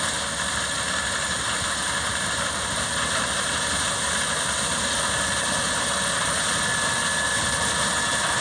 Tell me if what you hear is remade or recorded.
recorded